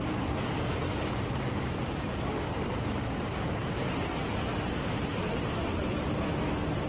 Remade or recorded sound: recorded